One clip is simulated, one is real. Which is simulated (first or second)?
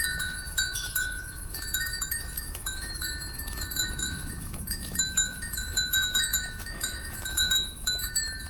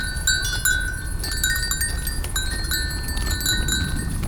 first